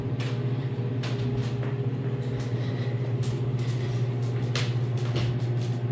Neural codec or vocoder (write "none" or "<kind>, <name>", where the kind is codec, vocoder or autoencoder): none